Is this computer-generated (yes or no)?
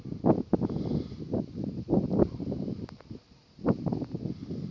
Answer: no